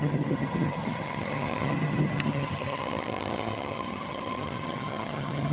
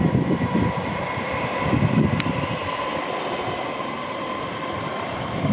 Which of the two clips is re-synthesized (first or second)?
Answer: first